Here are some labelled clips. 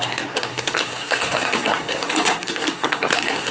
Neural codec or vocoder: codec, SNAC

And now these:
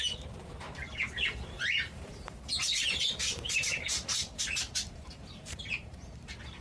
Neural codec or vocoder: vocoder, BigVGAN v2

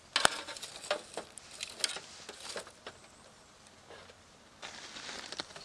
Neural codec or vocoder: none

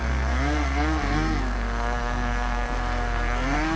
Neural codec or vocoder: codec, SNAC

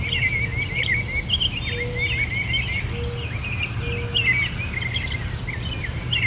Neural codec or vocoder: none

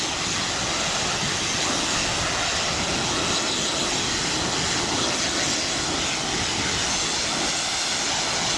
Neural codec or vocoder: none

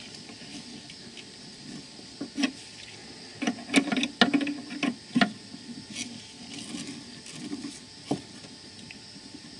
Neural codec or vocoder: none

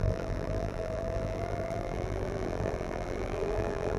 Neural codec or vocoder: vocoder, BigVGAN v2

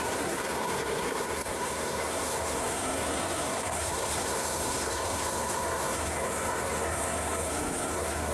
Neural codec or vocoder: codec, SNAC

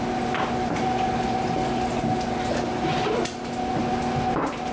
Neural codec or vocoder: none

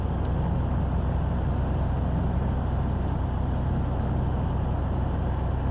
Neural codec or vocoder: none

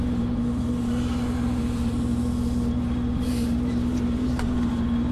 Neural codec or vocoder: vocoder, BigVGAN v2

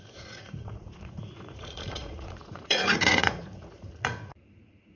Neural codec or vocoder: vocoder, Vocos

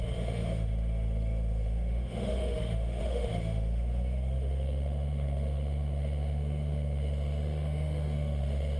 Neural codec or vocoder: autoencoder, DAC-VAE